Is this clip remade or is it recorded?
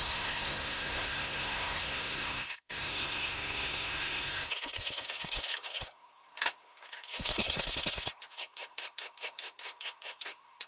remade